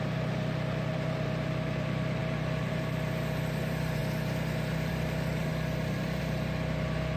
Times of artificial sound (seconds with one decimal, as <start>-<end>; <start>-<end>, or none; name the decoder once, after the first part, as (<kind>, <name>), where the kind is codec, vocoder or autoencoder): 0.0-4.0 (vocoder, BigVGAN v2); 4.9-5.5; 6.2-7.2